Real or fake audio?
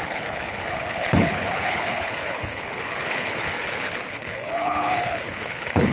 fake